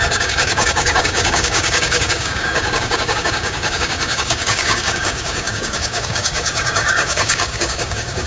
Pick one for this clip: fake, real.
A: fake